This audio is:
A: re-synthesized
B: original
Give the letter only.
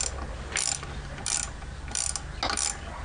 B